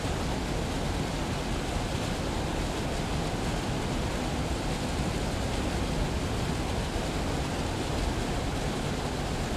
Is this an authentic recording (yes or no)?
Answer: yes